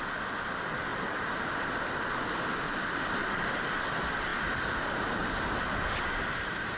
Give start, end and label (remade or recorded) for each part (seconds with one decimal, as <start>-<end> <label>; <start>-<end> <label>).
0.0-0.9 recorded; 0.9-1.7 remade; 1.7-3.2 recorded; 3.2-3.8 remade; 3.8-6.8 recorded